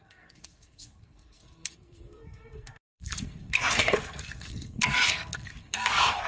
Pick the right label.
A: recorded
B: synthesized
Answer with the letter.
B